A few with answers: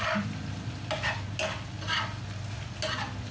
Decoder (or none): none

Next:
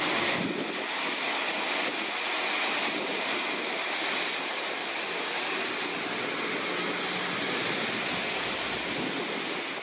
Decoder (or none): none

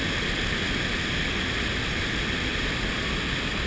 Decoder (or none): none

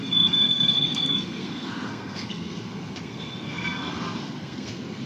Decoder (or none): codec, SNAC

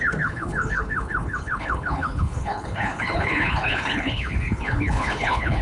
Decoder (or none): codec, HILCodec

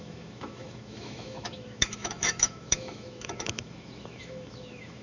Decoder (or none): autoencoder, DAC-VAE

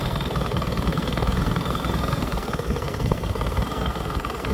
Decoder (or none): codec, SNAC